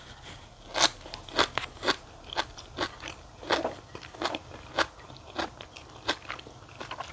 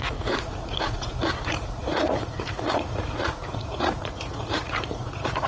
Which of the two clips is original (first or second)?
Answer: first